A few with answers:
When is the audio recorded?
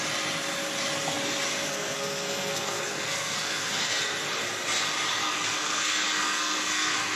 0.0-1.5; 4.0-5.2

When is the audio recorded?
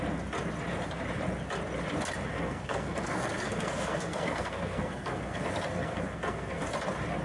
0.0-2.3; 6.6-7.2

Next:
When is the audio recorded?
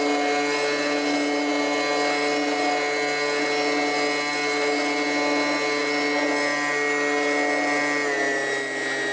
0.0-9.1